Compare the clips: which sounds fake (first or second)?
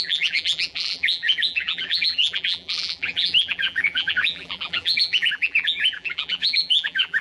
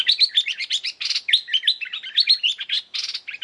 first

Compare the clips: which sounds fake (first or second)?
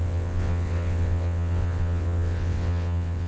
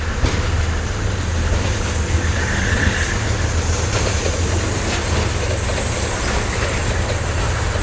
first